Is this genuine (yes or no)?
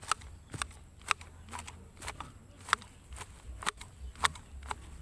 yes